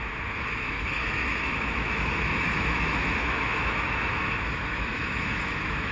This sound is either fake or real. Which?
fake